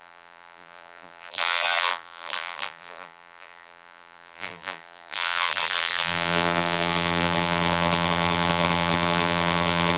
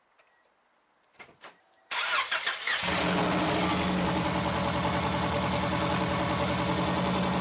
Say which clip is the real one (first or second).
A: second